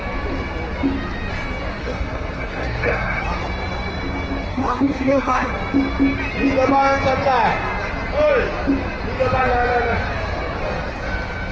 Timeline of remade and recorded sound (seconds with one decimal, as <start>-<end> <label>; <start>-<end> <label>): 0.0-1.8 recorded; 1.8-3.2 remade; 3.2-4.5 recorded; 4.5-5.5 remade; 5.5-11.5 recorded